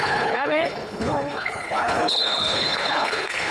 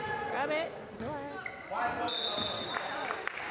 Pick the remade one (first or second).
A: first